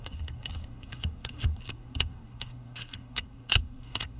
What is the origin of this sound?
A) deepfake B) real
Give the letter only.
A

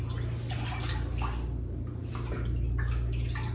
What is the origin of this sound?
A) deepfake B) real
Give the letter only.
B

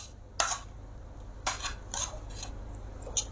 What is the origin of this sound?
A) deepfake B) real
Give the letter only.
B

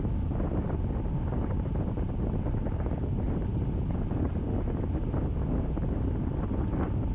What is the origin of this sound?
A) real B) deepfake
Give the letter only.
A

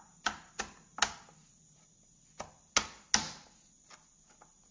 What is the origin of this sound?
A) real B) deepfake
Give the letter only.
A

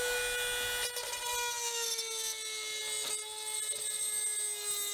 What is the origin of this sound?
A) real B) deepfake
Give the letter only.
A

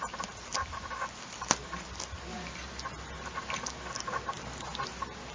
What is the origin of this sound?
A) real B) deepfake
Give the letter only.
A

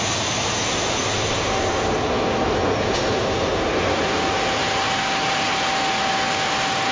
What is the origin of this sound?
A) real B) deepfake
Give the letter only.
A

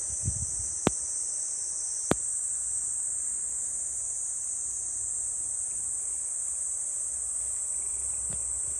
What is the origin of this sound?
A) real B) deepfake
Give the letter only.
A